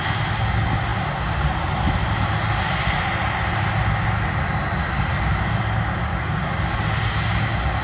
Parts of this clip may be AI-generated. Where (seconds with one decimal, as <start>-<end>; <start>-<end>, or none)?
6.1-6.7